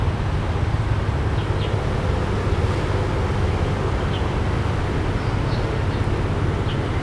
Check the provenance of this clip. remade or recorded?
recorded